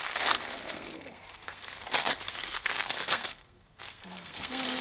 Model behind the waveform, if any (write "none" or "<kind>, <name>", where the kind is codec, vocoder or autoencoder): codec, SNAC